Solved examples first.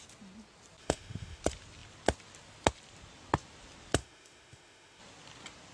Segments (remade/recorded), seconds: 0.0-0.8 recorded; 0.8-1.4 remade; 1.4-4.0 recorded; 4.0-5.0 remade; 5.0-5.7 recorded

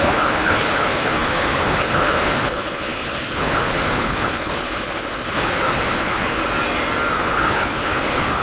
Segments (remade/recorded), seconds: 0.0-6.4 remade; 6.4-7.1 recorded; 7.1-8.4 remade

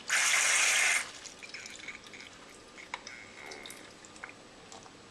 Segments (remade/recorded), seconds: 0.0-1.4 recorded; 1.4-3.4 remade; 3.4-5.1 recorded